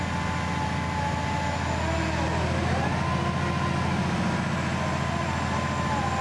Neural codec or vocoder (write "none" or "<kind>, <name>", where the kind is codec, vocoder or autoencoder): none